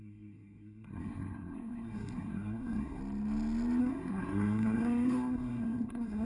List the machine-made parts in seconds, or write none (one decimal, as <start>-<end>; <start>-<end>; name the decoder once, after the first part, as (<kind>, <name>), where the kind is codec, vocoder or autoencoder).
0.0-3.0 (codec, SNAC); 3.8-6.2